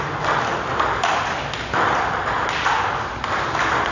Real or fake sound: real